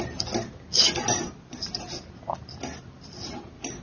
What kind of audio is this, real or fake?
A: real